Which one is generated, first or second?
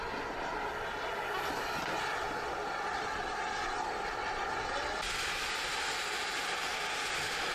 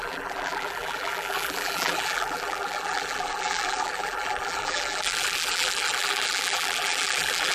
second